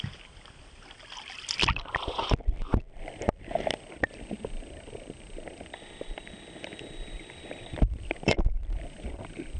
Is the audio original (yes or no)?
yes